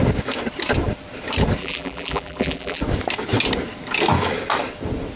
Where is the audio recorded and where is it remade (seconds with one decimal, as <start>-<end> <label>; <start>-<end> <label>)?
0.0-1.6 recorded; 1.6-2.8 remade; 2.8-5.2 recorded

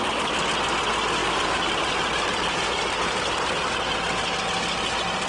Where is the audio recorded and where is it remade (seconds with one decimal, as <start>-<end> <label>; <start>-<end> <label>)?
0.0-1.2 recorded; 1.2-3.7 remade; 3.7-5.3 recorded